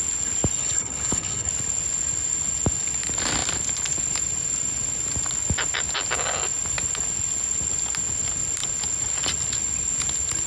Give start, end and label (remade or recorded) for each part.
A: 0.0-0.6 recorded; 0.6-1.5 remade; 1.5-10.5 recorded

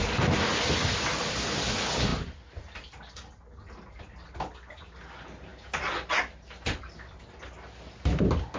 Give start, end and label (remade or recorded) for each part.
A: 0.0-8.6 recorded

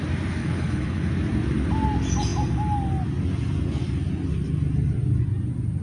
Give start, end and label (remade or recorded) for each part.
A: 0.0-0.4 recorded; 0.4-1.1 remade; 1.1-5.8 recorded

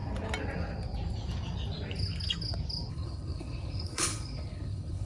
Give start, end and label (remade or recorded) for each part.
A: 0.0-2.9 recorded; 2.9-5.1 remade

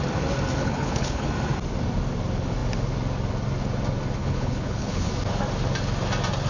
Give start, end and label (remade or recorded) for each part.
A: 0.0-0.6 recorded; 0.6-1.3 remade; 1.3-4.2 recorded; 4.2-5.1 remade; 5.1-6.5 recorded